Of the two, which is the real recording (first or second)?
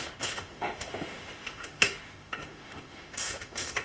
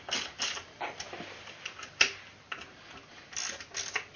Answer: second